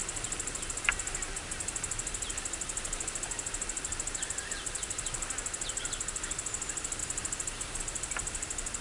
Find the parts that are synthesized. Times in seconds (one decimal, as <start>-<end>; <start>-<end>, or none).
none